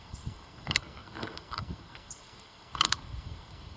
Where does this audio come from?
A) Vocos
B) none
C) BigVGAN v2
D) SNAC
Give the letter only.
D